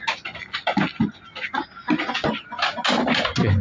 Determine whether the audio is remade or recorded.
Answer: recorded